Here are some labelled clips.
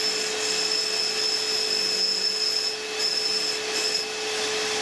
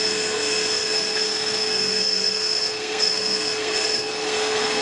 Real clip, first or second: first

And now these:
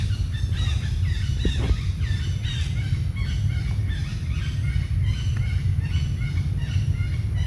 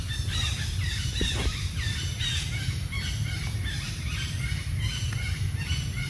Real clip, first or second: first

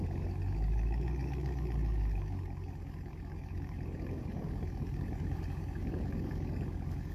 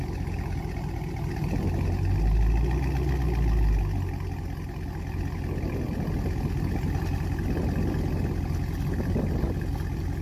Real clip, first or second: second